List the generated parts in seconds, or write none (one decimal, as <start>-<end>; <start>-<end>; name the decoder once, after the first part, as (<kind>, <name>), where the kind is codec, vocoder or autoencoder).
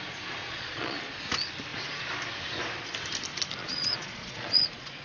0.4-1.2 (vocoder, Vocos); 3.6-5.0